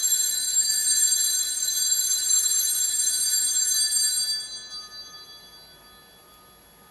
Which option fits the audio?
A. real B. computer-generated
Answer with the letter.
A